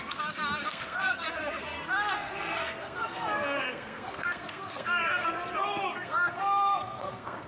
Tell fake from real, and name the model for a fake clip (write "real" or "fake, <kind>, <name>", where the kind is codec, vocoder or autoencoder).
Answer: fake, codec, SNAC